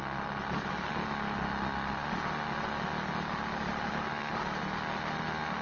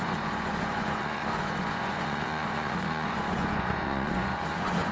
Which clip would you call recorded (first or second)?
first